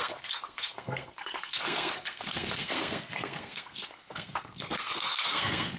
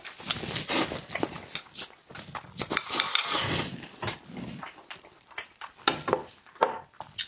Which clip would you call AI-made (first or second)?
first